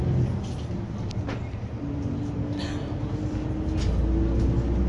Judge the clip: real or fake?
real